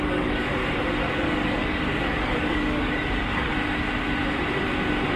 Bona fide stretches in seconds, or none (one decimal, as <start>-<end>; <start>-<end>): 0.6-1.1; 3.5-5.2